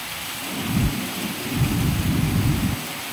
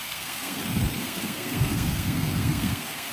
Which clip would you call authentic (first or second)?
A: first